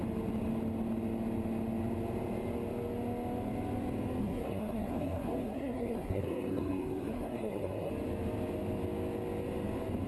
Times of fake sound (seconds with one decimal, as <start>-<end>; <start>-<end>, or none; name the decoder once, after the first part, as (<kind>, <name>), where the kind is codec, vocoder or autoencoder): 4.2-7.9 (codec, SNAC)